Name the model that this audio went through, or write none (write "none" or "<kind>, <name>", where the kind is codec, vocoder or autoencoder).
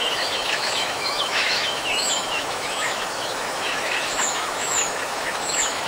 autoencoder, DAC-VAE